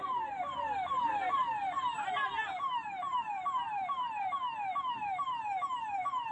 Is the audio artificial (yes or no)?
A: yes